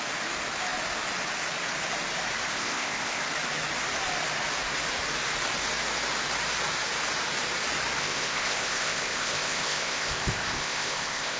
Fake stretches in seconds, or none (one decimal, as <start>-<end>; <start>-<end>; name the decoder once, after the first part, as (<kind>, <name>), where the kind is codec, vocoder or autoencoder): 2.5-3.2 (codec, ZipCodec); 8.0-11.4